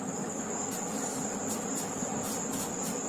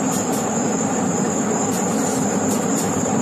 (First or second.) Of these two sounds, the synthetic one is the second